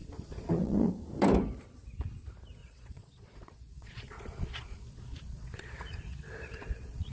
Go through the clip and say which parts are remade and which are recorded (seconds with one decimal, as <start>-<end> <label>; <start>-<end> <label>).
0.0-0.9 remade; 0.9-2.6 recorded; 2.6-7.1 remade